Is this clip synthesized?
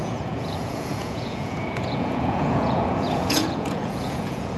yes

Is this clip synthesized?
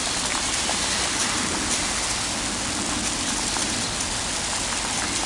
no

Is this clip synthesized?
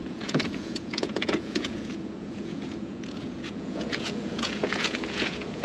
yes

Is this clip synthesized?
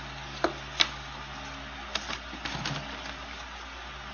no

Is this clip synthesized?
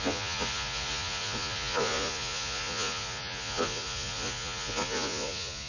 yes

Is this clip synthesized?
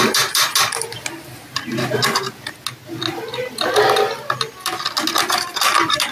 no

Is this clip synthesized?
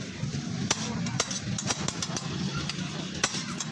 no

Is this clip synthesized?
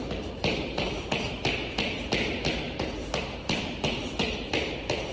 no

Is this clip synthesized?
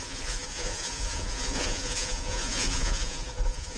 yes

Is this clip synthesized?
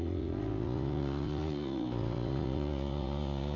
yes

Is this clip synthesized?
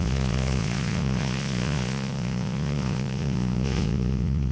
yes